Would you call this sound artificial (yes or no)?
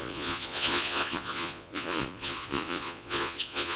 yes